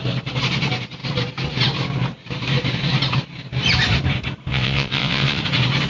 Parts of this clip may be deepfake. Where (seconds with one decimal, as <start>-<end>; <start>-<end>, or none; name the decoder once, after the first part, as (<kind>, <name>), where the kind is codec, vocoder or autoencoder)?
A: 4.5-5.4 (vocoder, WaveNeXt)